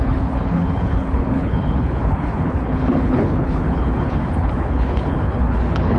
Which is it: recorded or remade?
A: remade